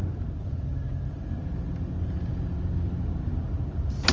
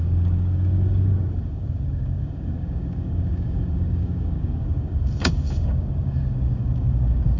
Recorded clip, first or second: first